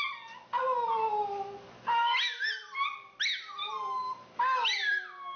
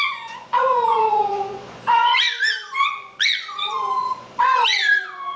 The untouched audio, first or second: first